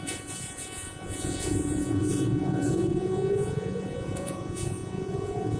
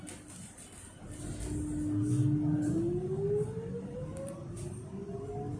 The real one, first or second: second